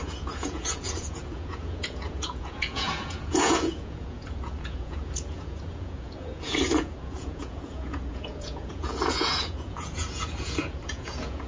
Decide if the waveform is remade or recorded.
remade